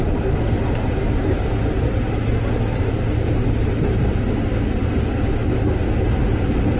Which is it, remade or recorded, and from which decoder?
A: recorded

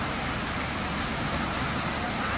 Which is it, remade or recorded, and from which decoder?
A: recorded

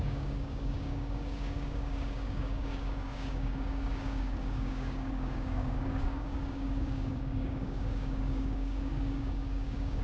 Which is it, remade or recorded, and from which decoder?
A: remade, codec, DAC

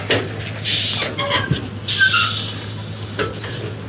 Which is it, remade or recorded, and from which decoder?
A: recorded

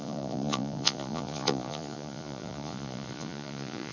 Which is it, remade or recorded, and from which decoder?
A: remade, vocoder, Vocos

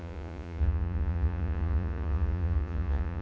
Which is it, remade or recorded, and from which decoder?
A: remade, vocoder, Vocos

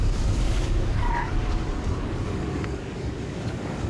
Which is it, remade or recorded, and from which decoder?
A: remade, codec, DAC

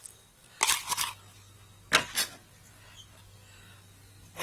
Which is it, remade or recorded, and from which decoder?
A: recorded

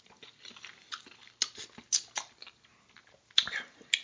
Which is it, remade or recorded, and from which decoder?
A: recorded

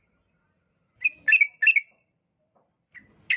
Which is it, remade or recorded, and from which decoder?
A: recorded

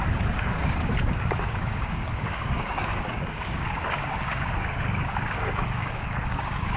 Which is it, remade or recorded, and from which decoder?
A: remade, codec, DAC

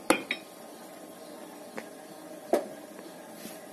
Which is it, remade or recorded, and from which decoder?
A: recorded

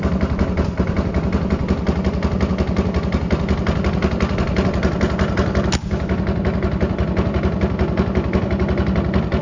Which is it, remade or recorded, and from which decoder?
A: recorded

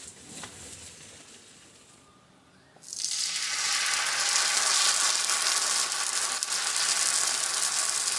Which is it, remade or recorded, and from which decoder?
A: recorded